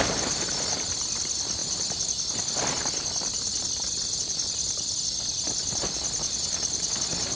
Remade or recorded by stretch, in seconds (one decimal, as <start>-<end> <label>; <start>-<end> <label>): 0.0-7.4 recorded